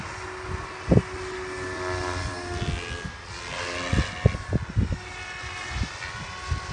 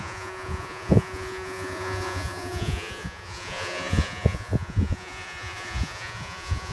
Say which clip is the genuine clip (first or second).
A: first